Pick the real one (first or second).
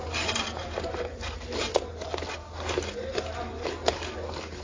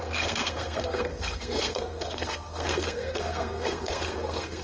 first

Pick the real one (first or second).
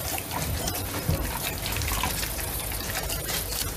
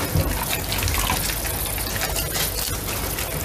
second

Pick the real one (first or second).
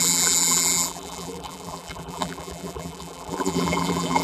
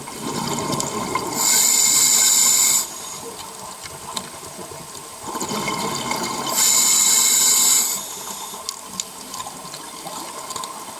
second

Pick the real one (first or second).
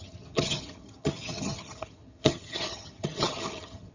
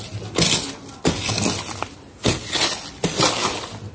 second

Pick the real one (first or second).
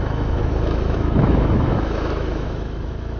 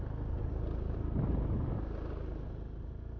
second